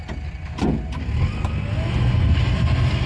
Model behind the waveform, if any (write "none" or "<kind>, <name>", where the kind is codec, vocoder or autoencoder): none